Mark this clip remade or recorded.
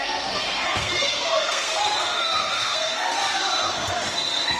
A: remade